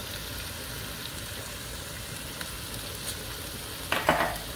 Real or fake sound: real